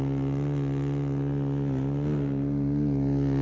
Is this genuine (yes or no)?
yes